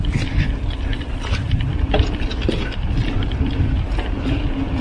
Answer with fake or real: real